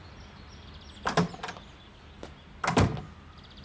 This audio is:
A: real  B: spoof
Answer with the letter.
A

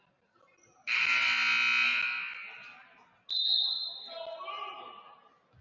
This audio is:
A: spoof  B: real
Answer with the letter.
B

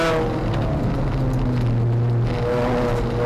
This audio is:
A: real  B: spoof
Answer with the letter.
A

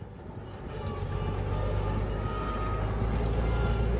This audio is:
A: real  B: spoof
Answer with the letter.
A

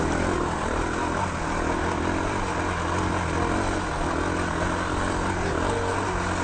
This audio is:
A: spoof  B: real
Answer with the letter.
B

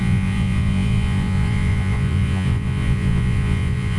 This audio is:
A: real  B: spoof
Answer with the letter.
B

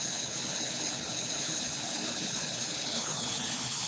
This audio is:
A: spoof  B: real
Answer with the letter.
A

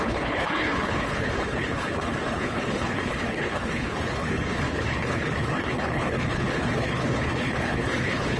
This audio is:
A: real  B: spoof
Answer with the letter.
B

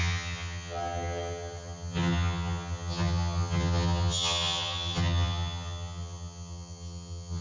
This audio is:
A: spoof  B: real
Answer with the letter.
A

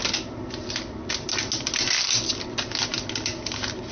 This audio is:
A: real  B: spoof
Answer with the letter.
A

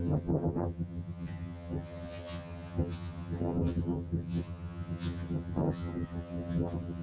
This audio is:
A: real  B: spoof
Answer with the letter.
B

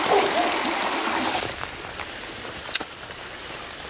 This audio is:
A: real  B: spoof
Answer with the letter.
A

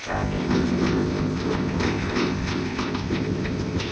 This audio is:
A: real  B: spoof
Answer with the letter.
B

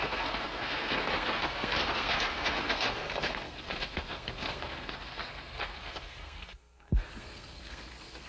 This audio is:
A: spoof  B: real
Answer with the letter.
A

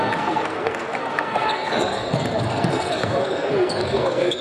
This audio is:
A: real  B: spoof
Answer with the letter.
B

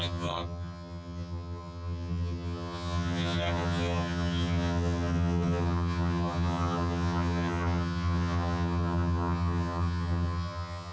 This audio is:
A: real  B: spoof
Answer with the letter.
B